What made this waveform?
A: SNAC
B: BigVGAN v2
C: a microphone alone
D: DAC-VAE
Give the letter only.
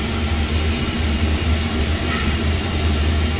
C